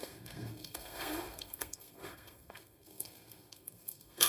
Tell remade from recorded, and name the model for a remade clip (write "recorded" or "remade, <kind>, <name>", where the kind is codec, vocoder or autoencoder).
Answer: remade, codec, SNAC